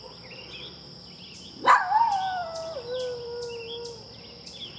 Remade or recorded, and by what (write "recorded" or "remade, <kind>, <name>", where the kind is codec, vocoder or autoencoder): recorded